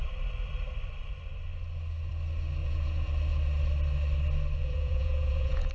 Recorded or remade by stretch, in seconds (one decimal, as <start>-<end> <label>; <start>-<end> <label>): 0.0-2.6 recorded; 2.6-3.1 remade; 3.1-4.6 recorded; 4.6-5.7 remade